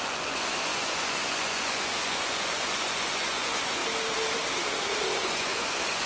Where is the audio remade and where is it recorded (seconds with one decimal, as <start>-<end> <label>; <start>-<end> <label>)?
0.0-3.8 remade; 3.8-5.1 recorded; 5.1-6.1 remade